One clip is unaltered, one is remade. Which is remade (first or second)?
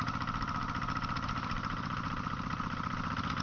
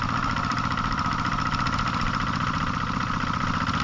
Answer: second